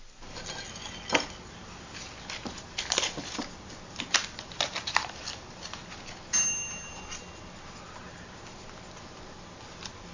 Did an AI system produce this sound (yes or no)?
no